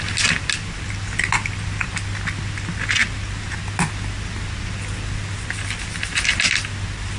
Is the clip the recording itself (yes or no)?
yes